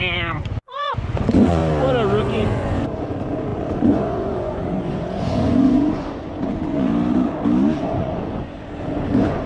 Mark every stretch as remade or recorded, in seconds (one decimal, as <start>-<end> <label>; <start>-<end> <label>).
0.0-1.6 remade; 1.6-2.2 recorded; 2.2-6.9 remade; 6.9-7.8 recorded; 7.8-9.5 remade